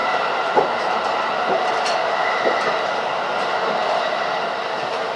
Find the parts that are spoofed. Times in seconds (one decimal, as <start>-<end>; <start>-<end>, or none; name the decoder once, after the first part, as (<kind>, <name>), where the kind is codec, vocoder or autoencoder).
0.0-1.7 (vocoder, BigVGAN v2)